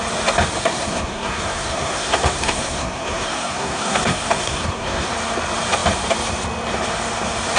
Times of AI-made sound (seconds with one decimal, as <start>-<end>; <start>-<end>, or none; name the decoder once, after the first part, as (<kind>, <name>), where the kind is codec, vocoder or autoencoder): 0.6-5.1 (codec, SNAC)